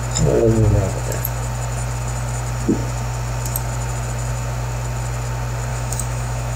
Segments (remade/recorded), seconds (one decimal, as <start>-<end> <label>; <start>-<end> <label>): 0.0-5.7 recorded; 5.7-6.6 remade